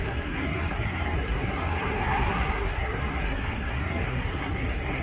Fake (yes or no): yes